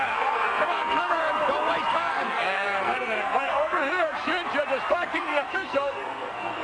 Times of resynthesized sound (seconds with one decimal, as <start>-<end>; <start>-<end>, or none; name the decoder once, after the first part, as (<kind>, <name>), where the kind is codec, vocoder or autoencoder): 0.0-1.2 (codec, SNAC); 1.9-4.3; 4.9-6.6